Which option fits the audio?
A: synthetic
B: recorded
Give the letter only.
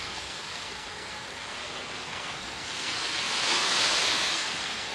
A